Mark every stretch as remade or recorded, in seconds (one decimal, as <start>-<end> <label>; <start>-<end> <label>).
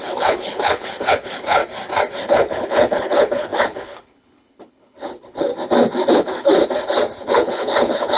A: 0.0-1.6 remade; 1.6-2.2 recorded; 2.2-5.5 remade; 5.5-6.1 recorded; 6.1-6.6 remade; 6.6-7.2 recorded; 7.2-8.2 remade